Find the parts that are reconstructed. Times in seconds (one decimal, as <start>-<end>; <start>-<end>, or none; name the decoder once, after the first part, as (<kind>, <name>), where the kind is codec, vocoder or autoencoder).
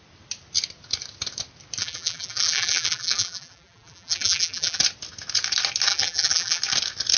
1.8-4.8 (vocoder, BigVGAN v2); 5.9-6.6